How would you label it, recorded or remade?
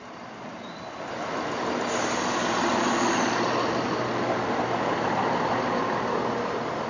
recorded